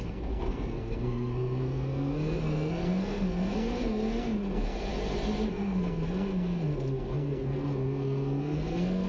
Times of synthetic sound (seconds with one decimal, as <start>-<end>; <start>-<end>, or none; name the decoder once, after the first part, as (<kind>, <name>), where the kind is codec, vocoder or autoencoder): 0.0-4.9 (codec, SNAC); 5.5-9.1